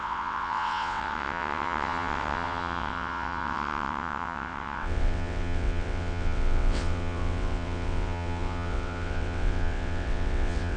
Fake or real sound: fake